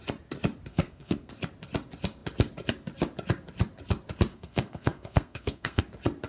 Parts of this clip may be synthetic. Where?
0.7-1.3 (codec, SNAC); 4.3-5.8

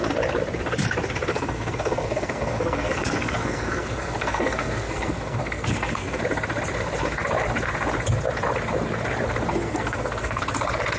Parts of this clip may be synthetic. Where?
1.3-6.2 (codec, SNAC); 9.5-10.4

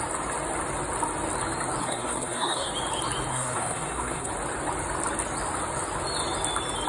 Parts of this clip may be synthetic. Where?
1.8-2.7 (codec, SNAC); 3.3-4.3

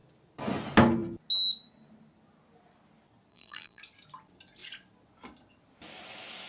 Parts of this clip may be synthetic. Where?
3.3-3.8 (vocoder, BigVGAN v2)

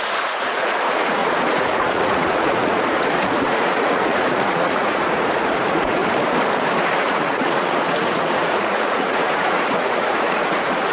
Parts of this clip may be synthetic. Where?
0.0-6.0 (vocoder, Vocos); 7.0-10.9

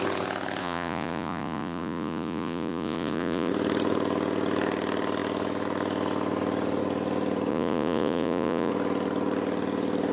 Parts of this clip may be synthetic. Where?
0.6-3.5 (vocoder, Vocos); 7.5-8.7

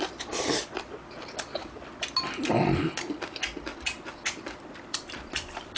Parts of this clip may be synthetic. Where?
0.0-1.9 (vocoder, BigVGAN v2); 3.8-5.8

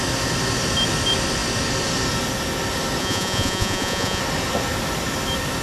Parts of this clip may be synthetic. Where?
3.0-4.2 (vocoder, Vocos)